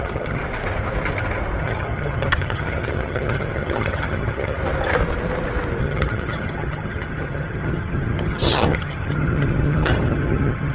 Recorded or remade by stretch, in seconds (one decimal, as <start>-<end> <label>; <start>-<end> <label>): 0.0-0.4 remade; 0.4-1.6 recorded; 1.6-4.6 remade; 4.6-5.8 recorded; 5.8-10.7 remade